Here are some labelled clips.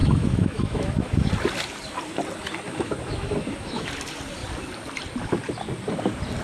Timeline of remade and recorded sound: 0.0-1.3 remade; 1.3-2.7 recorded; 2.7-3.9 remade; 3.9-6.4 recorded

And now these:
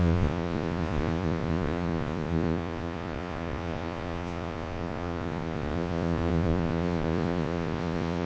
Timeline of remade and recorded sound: 0.0-8.3 remade

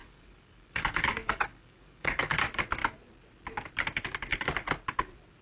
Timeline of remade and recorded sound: 0.0-2.4 remade; 2.4-5.4 recorded

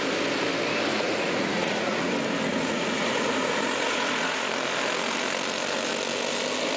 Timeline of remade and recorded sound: 0.0-0.9 recorded; 0.9-2.1 remade; 2.1-2.5 recorded; 2.5-4.5 remade; 4.5-6.8 recorded

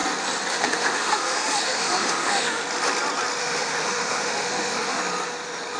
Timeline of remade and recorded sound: 0.0-0.5 recorded; 0.5-2.6 remade; 2.6-3.4 recorded; 3.4-5.0 remade; 5.0-5.8 recorded

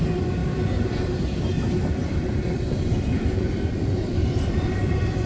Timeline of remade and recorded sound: 0.0-0.4 recorded; 0.4-1.6 remade; 1.6-2.0 recorded; 2.0-5.3 remade

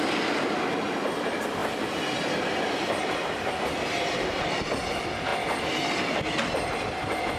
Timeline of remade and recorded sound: 0.0-7.4 recorded